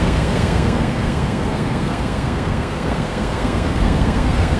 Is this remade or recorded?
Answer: remade